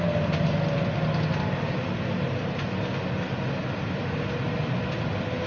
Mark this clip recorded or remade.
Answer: recorded